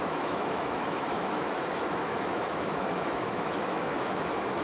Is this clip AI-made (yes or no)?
yes